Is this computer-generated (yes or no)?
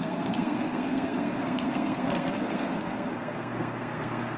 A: yes